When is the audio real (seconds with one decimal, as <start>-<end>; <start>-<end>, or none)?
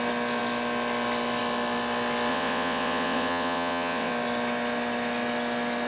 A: 0.0-2.3; 4.1-5.9